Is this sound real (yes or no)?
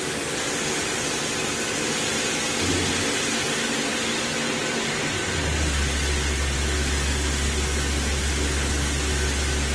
yes